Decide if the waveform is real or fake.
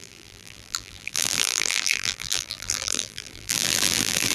fake